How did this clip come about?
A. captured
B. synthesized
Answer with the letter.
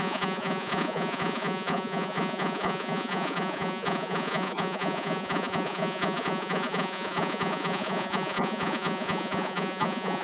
B